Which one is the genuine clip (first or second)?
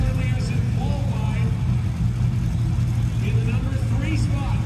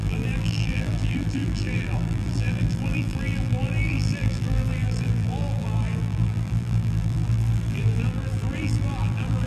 first